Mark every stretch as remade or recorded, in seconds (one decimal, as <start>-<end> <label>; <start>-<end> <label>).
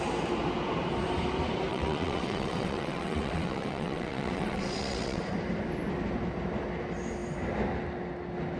0.0-1.7 recorded; 1.7-5.2 remade; 5.2-8.6 recorded